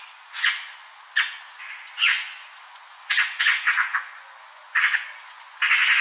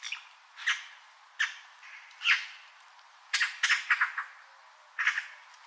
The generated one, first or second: first